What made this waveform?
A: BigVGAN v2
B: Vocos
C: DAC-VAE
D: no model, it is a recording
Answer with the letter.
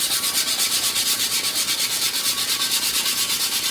D